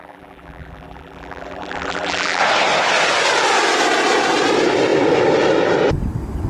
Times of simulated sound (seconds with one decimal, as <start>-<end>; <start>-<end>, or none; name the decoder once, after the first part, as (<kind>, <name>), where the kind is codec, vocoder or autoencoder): 0.0-2.4 (vocoder, BigVGAN v2)